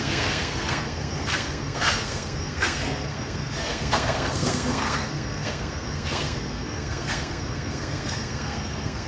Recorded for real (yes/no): no